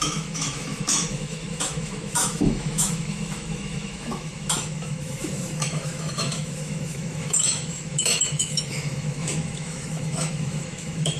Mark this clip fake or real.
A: fake